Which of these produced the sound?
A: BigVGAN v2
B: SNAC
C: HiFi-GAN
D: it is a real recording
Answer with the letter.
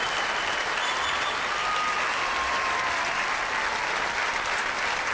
D